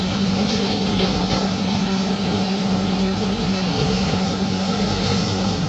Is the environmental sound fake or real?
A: fake